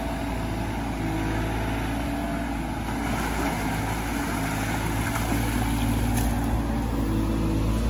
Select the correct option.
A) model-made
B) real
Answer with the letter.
B